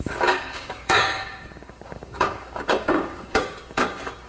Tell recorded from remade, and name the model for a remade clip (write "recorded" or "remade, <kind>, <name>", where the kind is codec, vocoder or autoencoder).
remade, codec, DAC